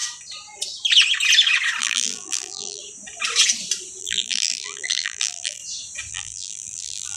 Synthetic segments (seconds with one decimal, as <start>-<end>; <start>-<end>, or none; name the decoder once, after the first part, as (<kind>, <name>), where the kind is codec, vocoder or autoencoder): 1.8-2.8 (vocoder, BigVGAN v2); 4.0-5.6; 6.1-7.2